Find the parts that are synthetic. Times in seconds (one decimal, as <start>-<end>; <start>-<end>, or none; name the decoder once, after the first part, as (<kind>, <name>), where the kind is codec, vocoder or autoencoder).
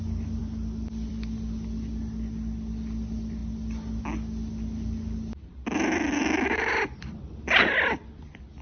none